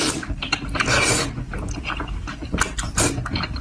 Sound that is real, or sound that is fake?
real